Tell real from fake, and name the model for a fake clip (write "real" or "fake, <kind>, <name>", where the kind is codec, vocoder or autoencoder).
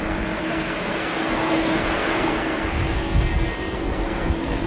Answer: fake, codec, SNAC